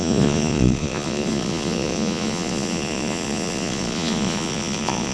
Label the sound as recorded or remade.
remade